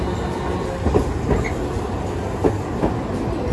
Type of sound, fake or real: real